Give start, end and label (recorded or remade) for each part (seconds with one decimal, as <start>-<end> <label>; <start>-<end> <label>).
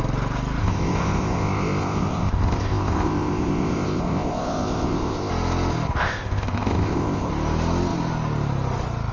0.0-0.6 recorded; 0.6-5.3 remade; 5.3-6.0 recorded; 6.0-7.3 remade; 7.3-9.1 recorded